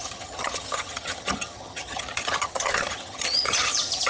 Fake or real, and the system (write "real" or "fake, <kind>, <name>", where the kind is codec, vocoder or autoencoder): fake, vocoder, HiFi-GAN